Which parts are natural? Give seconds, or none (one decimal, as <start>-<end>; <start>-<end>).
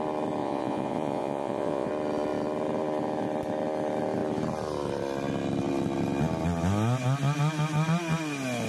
0.0-0.4; 1.9-8.7